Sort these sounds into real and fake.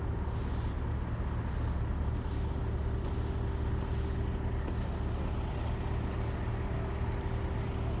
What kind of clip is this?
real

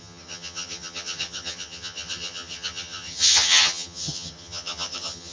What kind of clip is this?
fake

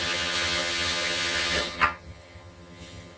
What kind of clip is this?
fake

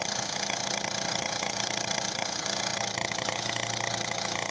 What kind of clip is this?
fake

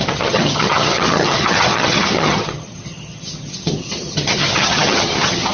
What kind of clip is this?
fake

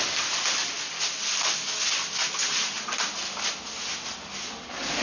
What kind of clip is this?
real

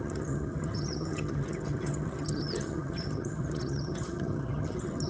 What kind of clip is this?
fake